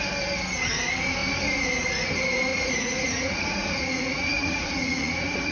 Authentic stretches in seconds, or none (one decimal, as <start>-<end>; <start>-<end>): 0.0-2.5